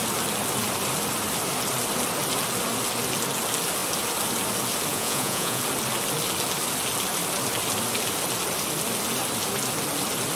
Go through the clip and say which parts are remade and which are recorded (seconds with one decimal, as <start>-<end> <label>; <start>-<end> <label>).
0.0-4.9 recorded; 4.9-5.6 remade; 5.6-10.4 recorded

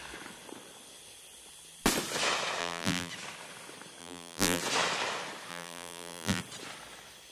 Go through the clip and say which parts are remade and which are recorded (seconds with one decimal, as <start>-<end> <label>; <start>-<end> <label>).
0.0-2.6 recorded; 2.6-3.1 remade; 3.1-4.0 recorded; 4.0-4.6 remade; 4.6-5.5 recorded; 5.5-6.4 remade; 6.4-7.3 recorded

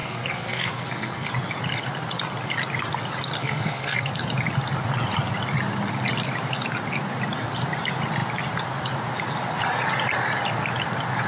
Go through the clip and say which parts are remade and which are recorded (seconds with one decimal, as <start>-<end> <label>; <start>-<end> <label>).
0.0-1.3 remade; 1.3-3.4 recorded; 3.4-4.1 remade; 4.1-11.3 recorded

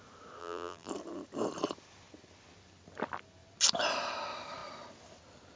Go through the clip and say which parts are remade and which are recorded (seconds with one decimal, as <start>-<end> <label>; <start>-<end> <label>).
0.0-0.4 recorded; 0.4-0.9 remade; 0.9-5.6 recorded

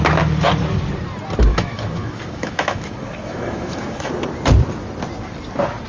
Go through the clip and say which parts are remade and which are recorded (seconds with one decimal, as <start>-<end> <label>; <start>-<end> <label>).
0.0-1.5 recorded; 1.5-4.1 remade; 4.1-5.9 recorded

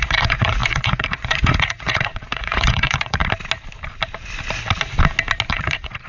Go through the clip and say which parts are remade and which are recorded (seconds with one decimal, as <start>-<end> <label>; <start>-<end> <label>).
0.0-3.2 remade; 3.2-5.5 recorded; 5.5-6.1 remade

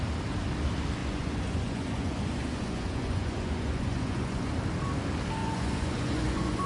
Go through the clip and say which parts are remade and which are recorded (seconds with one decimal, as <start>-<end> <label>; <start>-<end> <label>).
0.0-1.0 recorded; 1.0-4.5 remade; 4.5-5.4 recorded; 5.4-6.7 remade

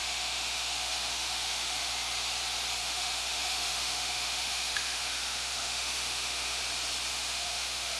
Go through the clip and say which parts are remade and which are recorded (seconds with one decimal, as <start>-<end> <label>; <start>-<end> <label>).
0.0-1.9 remade; 1.9-2.8 recorded; 2.8-6.6 remade; 6.6-7.1 recorded; 7.1-8.0 remade